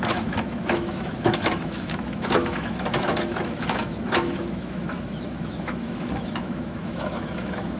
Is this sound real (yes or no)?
no